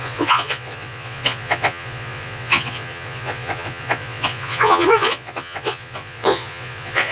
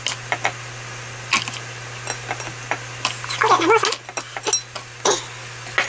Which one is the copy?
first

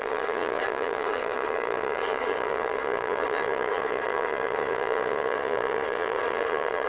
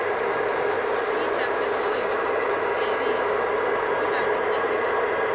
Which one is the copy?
first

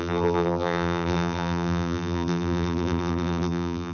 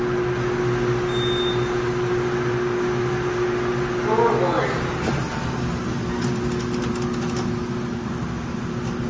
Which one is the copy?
first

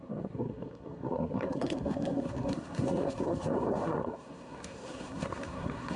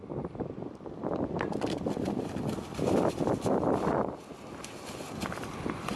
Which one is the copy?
first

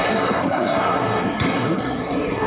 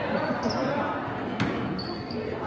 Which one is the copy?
first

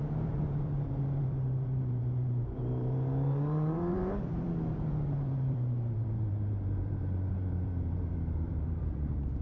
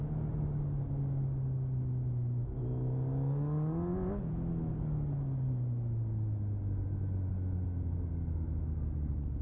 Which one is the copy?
first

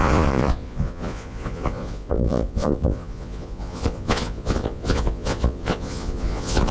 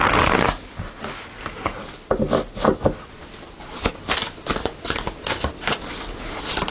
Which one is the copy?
first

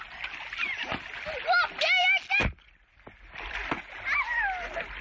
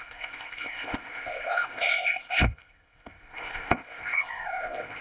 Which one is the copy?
second